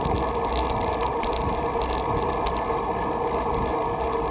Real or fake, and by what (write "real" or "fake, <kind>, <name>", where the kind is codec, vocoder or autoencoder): real